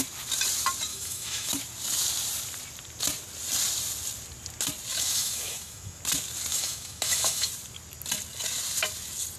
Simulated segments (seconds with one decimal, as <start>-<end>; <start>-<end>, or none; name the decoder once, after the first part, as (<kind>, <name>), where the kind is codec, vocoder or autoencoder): 0.9-1.5 (autoencoder, DAC-VAE); 4.9-6.0; 6.5-7.5